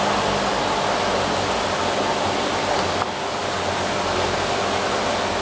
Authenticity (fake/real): real